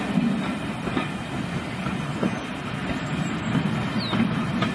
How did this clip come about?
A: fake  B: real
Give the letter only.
B